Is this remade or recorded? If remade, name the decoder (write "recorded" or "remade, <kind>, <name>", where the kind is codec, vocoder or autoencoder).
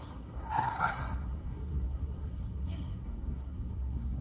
remade, codec, SNAC